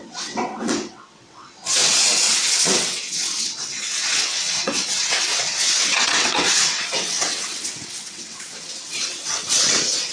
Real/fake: fake